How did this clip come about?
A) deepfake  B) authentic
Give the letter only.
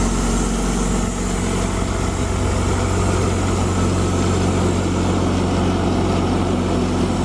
B